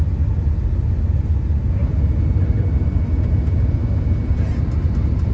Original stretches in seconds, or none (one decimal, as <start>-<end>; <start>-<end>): 0.0-5.3